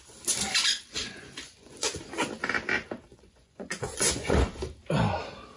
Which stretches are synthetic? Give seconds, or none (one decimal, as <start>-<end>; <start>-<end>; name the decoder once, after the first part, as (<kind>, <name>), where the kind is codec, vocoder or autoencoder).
1.0-2.2 (vocoder, Vocos); 3.1-4.4